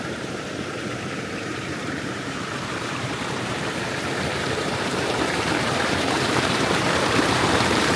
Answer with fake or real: fake